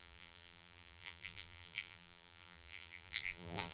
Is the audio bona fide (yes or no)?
no